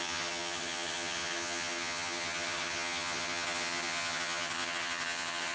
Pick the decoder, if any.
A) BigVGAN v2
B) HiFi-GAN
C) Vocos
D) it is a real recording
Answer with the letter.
B